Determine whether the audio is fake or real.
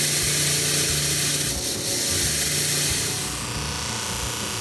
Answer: real